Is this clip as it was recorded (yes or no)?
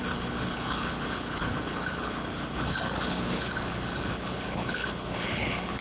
no